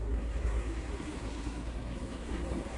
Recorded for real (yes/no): no